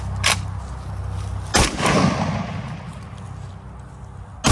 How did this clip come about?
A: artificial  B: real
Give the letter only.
B